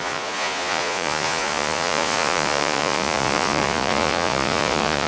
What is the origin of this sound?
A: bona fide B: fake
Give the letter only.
B